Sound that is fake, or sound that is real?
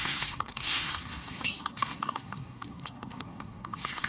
fake